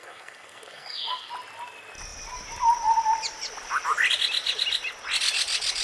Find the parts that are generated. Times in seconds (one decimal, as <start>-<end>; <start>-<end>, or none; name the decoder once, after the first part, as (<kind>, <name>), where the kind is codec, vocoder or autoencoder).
0.0-1.3 (codec, SNAC)